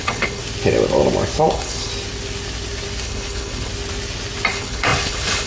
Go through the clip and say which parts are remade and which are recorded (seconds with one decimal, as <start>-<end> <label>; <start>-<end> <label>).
0.0-0.4 remade; 0.4-1.5 recorded; 1.5-1.9 remade; 1.9-3.0 recorded; 3.0-3.7 remade; 3.7-4.5 recorded; 4.5-5.5 remade